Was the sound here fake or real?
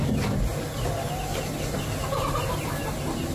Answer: real